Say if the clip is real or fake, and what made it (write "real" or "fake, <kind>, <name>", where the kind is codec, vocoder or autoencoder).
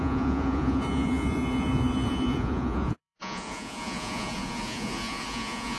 fake, vocoder, Vocos